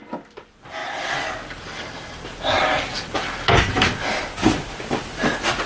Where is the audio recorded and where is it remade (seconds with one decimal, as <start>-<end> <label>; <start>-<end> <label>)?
0.0-5.7 recorded